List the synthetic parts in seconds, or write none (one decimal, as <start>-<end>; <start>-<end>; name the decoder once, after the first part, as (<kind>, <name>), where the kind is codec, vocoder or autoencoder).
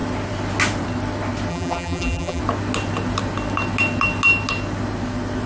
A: 1.5-2.4 (vocoder, BigVGAN v2)